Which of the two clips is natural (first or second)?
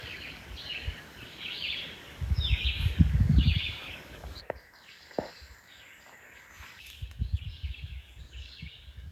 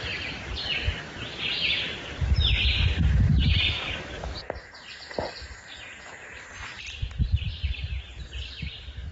second